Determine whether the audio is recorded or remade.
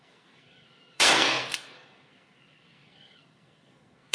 remade